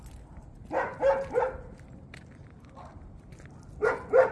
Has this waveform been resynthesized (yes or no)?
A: no